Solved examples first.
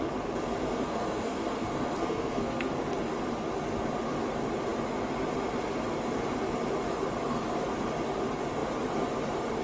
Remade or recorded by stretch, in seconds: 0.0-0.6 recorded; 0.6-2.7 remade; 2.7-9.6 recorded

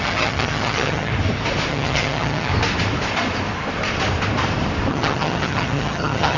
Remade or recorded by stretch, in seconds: 0.0-1.1 remade; 1.1-1.7 recorded; 1.7-2.5 remade; 2.5-4.9 recorded; 4.9-6.4 remade

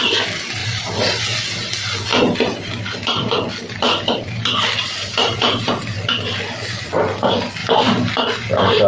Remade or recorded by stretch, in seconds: 0.0-2.1 recorded; 2.1-6.9 remade; 6.9-7.6 recorded; 7.6-8.9 remade

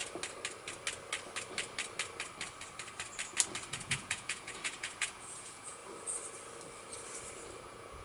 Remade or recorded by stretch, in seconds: 0.0-3.7 recorded; 3.7-5.8 remade; 5.8-7.6 recorded; 7.6-8.0 remade